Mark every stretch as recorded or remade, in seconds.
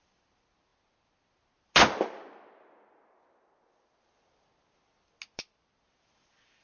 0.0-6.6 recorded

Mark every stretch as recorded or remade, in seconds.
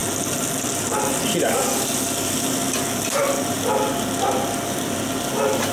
0.0-5.7 recorded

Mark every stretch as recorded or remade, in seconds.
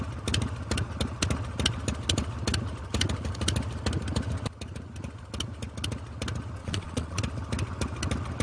0.0-6.6 recorded; 6.6-7.2 remade; 7.2-8.4 recorded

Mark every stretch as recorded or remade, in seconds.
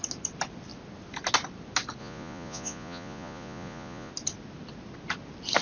0.0-2.0 recorded; 2.0-4.1 remade; 4.1-5.6 recorded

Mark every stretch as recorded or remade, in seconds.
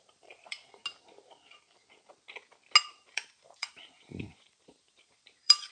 0.0-0.8 remade; 0.8-2.9 recorded; 2.9-5.7 remade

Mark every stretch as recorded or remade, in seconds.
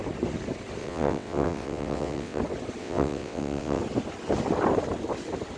0.0-0.8 recorded; 0.8-2.4 remade; 2.4-2.8 recorded; 2.8-3.8 remade; 3.8-5.6 recorded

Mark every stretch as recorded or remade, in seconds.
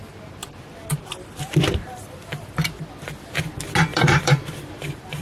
0.0-3.9 recorded; 3.9-4.5 remade; 4.5-5.2 recorded